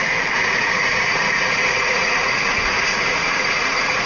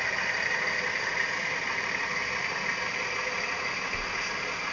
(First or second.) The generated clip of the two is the first